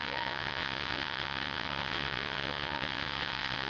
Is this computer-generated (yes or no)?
yes